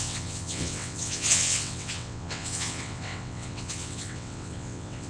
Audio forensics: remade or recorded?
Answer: remade